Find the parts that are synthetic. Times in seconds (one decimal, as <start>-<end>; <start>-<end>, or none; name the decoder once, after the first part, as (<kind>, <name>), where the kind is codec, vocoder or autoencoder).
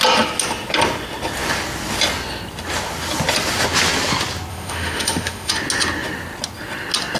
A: 4.5-5.5 (autoencoder, DAC-VAE)